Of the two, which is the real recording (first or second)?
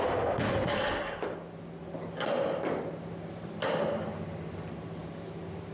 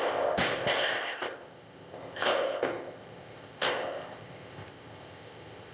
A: first